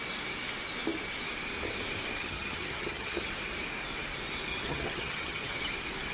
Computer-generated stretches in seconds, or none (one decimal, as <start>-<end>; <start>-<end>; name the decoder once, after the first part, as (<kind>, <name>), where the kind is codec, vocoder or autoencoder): 2.2-3.3 (vocoder, HiFi-GAN); 4.5-5.6

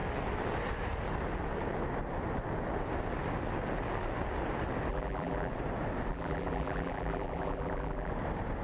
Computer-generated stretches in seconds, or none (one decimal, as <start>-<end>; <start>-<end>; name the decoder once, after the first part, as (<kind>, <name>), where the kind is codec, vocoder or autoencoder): 4.9-5.5 (vocoder, BigVGAN v2); 6.1-8.1